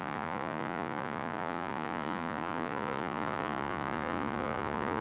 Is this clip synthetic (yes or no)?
yes